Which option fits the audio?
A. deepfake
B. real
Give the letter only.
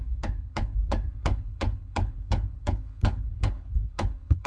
A